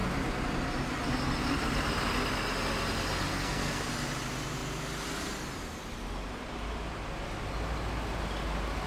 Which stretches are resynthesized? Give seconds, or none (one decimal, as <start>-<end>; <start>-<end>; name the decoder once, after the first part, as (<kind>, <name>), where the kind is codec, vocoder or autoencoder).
3.3-3.9 (codec, SNAC)